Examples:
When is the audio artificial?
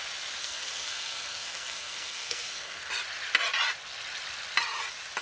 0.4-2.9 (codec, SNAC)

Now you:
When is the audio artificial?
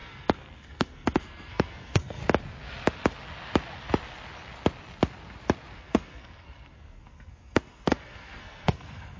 0.0-2.2 (codec, SNAC); 5.8-9.2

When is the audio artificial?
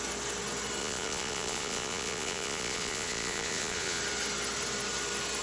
0.8-4.0 (vocoder, Vocos)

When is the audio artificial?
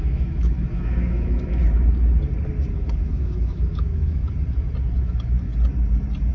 0.0-1.6 (autoencoder, DAC-VAE); 2.7-4.2; 5.0-5.5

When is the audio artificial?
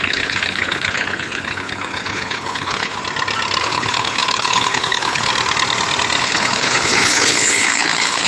0.0-3.0 (codec, HILCodec); 3.6-5.3; 6.2-8.3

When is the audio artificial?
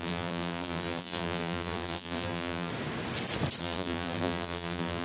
0.0-2.7 (vocoder, BigVGAN v2); 3.6-5.0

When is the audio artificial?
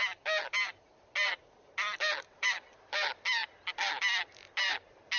2.3-3.4 (vocoder, BigVGAN v2)